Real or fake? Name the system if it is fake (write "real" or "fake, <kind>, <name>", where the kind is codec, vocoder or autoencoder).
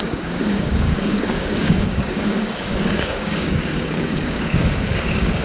fake, codec, DAC